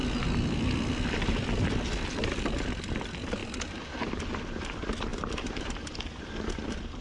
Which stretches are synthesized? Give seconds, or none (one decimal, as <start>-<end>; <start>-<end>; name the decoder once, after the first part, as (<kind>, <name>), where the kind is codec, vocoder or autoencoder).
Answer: 1.7-7.0 (vocoder, BigVGAN v2)